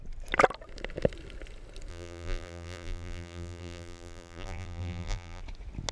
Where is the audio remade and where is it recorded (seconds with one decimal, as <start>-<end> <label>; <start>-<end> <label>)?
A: 0.0-1.9 recorded; 1.9-5.4 remade; 5.4-5.9 recorded